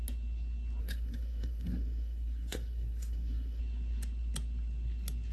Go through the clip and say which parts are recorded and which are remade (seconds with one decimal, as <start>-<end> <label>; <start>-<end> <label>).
0.0-0.8 recorded; 0.8-3.6 remade; 3.6-5.3 recorded